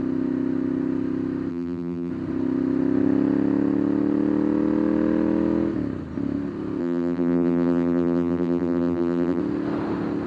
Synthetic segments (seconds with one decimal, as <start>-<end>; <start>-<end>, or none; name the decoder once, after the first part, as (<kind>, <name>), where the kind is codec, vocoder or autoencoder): 1.5-2.1 (vocoder, BigVGAN v2); 6.8-9.4